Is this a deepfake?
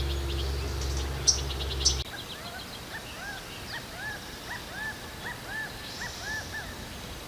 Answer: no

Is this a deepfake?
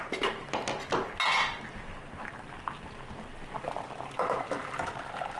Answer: no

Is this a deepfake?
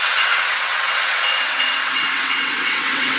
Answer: yes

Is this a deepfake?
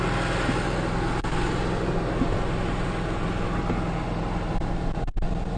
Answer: no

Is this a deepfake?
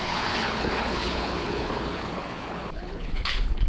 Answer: yes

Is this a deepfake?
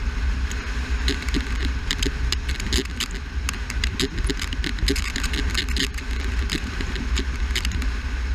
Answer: no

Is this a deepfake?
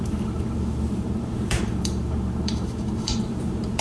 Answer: yes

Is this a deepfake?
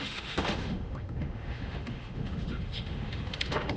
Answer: yes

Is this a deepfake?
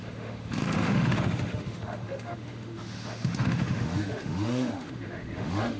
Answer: yes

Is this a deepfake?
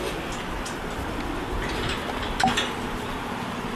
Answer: no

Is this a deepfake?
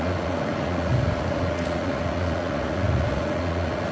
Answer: yes